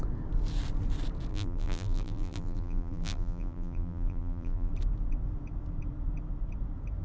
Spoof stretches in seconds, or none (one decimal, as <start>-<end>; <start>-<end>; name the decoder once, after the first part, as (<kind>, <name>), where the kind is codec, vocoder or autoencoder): 1.3-4.7 (vocoder, BigVGAN v2)